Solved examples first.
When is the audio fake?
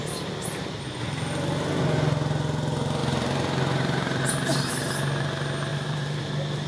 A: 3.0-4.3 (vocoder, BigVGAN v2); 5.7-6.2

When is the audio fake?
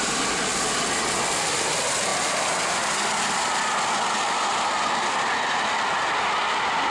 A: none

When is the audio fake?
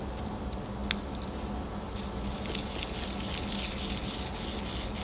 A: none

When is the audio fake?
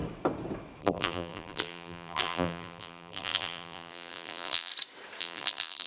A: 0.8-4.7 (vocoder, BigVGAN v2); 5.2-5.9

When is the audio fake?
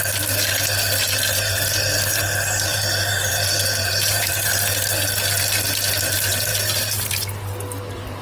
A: 2.7-4.5 (vocoder, BigVGAN v2); 6.5-7.1